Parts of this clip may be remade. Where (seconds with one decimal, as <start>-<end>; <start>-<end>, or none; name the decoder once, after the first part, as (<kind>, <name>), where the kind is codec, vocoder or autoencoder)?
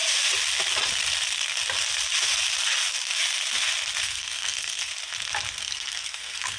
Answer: 4.0-4.9 (codec, SNAC); 5.6-6.6